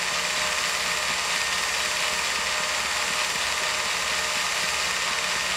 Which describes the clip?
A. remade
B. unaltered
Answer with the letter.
B